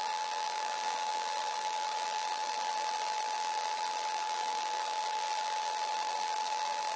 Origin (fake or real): fake